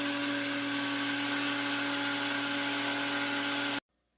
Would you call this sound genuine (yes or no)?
yes